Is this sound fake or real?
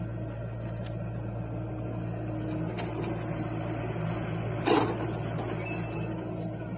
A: real